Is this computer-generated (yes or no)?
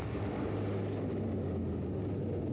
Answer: no